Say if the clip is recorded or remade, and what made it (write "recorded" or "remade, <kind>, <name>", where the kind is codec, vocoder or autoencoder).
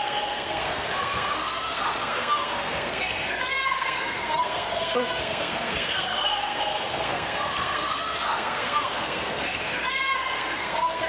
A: remade, codec, SNAC